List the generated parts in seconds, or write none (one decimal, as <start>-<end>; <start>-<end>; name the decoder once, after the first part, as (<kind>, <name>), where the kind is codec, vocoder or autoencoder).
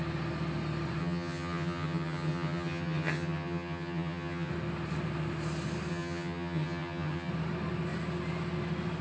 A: 1.0-4.5 (vocoder, HiFi-GAN); 5.9-7.3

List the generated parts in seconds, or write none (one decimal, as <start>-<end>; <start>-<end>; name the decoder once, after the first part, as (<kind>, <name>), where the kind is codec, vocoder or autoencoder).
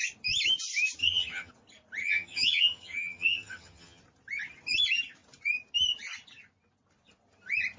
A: 1.0-1.5 (vocoder, HiFi-GAN); 2.0-4.0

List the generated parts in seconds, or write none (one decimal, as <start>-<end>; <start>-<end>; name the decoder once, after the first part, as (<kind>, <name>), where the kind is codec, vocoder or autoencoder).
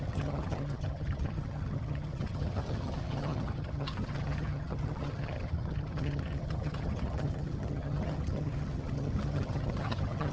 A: 0.0-10.3 (vocoder, HiFi-GAN)